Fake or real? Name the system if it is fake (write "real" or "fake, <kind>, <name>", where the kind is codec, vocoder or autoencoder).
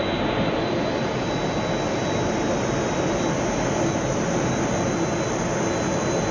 real